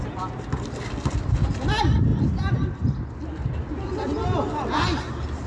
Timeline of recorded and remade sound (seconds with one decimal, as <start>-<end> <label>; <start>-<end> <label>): 0.0-5.5 recorded